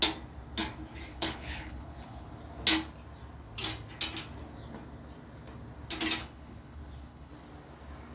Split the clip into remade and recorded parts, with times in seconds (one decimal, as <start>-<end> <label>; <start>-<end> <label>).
0.0-1.1 recorded; 1.1-2.3 remade; 2.3-6.2 recorded; 6.2-7.3 remade; 7.3-8.1 recorded